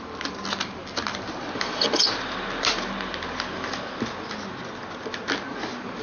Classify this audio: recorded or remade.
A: recorded